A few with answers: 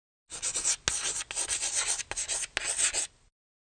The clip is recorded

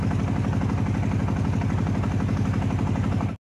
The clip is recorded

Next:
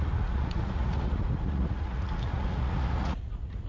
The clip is remade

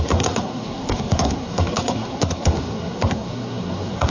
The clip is remade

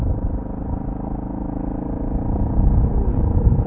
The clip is recorded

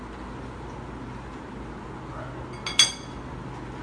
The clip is recorded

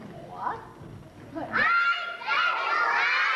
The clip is recorded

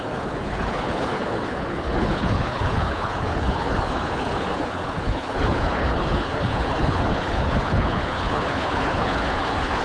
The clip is remade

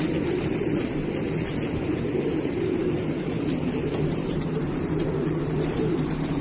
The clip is remade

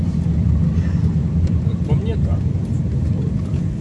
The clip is recorded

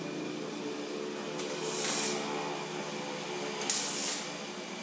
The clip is recorded